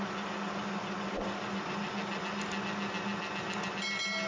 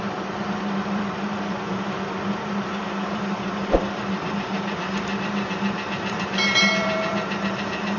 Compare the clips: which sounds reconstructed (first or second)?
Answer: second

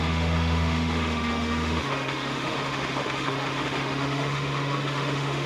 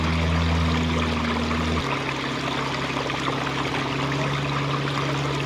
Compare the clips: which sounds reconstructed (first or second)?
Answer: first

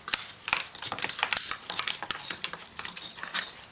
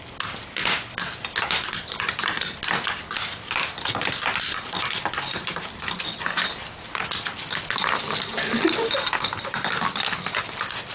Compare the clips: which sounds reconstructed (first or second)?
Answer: first